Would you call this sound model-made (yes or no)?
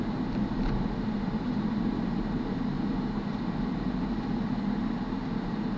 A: no